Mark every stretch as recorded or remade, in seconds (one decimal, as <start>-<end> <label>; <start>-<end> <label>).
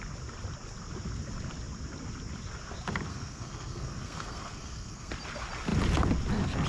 0.0-3.1 recorded; 3.1-5.1 remade; 5.1-6.7 recorded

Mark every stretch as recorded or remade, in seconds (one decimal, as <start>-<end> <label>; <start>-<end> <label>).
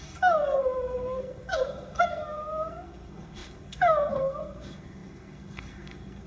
0.0-6.3 remade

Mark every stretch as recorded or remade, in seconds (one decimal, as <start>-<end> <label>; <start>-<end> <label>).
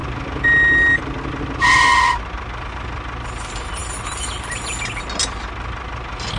0.0-6.4 recorded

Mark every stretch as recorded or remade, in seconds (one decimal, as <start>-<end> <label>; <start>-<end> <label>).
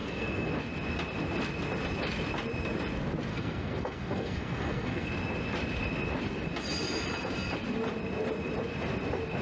0.0-0.5 remade; 0.5-3.3 recorded; 3.3-5.1 remade; 5.1-9.4 recorded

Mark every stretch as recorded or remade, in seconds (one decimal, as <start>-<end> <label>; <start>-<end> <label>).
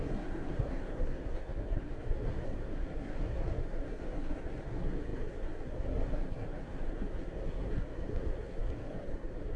0.0-9.6 remade